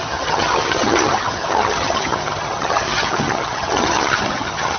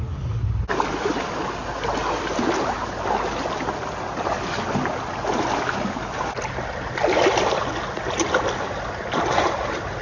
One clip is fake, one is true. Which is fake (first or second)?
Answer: first